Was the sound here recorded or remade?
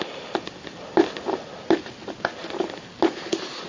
recorded